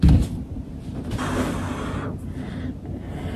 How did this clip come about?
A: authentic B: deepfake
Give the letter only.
A